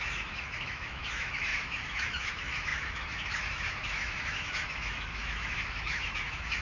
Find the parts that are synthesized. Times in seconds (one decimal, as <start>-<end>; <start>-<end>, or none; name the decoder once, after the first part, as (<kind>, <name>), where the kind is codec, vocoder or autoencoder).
0.0-6.6 (autoencoder, DAC-VAE)